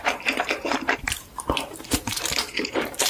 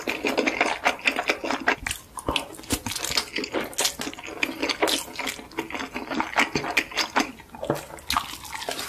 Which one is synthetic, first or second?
first